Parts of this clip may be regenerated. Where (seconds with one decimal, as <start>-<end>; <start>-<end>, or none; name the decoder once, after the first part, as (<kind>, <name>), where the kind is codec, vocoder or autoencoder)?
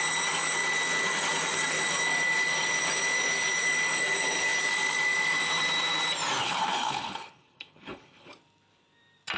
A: 6.4-8.3 (codec, HILCodec)